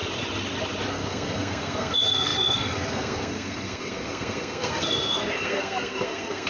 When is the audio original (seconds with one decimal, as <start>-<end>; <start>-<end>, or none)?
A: 0.0-0.9

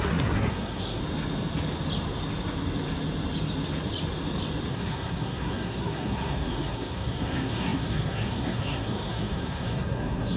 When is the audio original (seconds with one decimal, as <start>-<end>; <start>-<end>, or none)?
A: 1.0-4.7

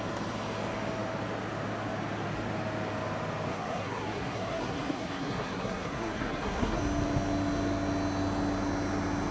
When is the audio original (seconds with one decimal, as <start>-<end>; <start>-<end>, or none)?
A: 0.0-3.5; 6.8-9.3

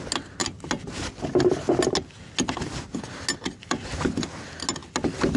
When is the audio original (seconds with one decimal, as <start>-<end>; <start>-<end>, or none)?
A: 0.0-5.4